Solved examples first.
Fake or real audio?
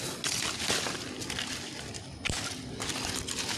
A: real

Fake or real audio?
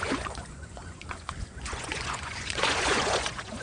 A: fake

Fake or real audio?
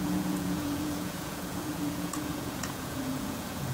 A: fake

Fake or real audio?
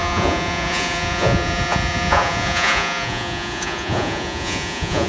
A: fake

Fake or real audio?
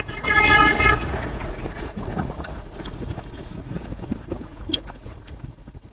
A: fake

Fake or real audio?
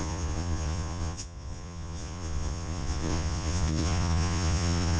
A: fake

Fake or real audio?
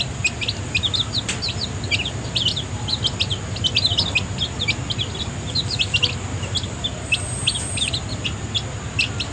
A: real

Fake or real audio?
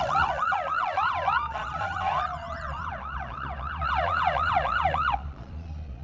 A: fake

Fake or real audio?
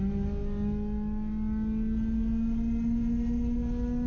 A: real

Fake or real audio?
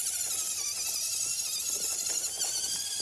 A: real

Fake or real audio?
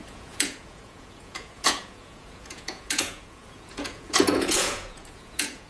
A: fake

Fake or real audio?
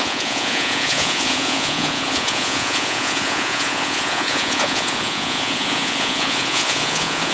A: fake